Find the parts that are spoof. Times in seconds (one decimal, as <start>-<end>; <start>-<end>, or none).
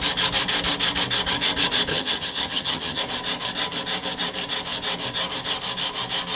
1.9-3.0